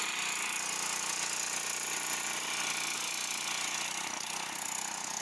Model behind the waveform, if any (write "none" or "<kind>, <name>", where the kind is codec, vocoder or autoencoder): none